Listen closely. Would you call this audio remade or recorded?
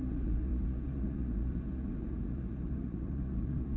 remade